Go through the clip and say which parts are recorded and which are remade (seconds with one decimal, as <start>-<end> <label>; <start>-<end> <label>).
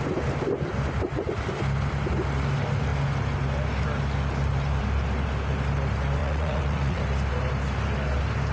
0.0-6.2 recorded; 6.2-7.0 remade; 7.0-8.5 recorded